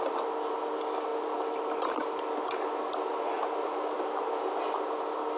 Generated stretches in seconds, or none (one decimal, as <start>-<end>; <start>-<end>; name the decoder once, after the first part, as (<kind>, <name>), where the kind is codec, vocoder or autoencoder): none